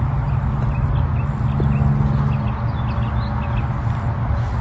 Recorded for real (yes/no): yes